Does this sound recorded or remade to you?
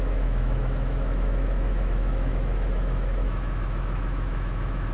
remade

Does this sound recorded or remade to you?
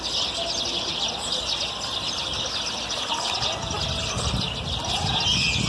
recorded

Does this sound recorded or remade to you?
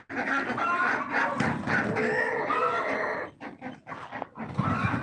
recorded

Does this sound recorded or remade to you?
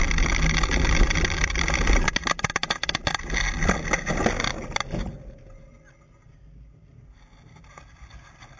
recorded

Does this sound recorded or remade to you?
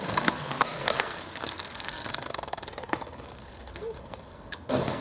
remade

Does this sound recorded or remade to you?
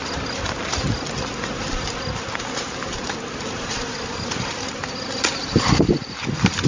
recorded